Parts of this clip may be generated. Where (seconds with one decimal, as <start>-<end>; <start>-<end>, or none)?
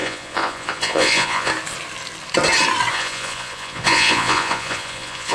0.0-1.5; 2.9-5.3